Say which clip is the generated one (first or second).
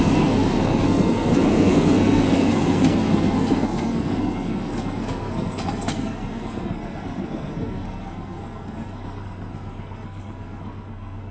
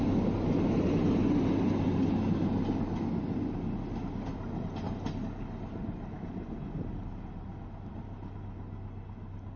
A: first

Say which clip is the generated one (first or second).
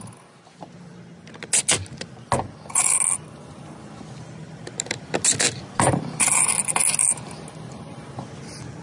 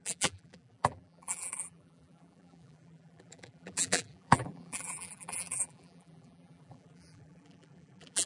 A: second